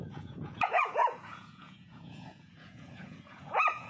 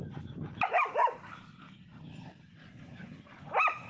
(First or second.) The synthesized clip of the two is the first